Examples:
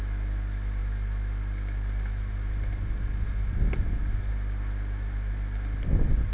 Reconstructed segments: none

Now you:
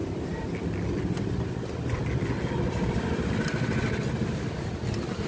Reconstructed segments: none